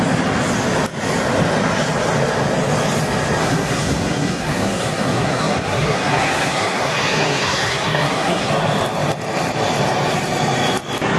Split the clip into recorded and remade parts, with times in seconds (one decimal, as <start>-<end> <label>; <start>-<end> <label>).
0.0-3.4 recorded; 3.4-8.5 remade; 8.5-11.2 recorded